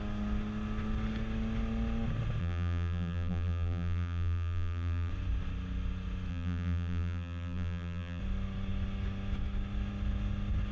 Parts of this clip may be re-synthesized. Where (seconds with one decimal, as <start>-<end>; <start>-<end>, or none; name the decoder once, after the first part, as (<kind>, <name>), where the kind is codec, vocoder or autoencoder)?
2.4-5.1 (vocoder, BigVGAN v2); 6.3-8.2